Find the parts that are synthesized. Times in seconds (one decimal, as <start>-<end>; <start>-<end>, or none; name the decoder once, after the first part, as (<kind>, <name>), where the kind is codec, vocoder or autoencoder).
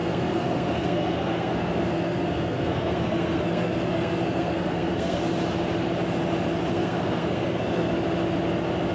0.0-5.2 (codec, SNAC); 6.7-7.9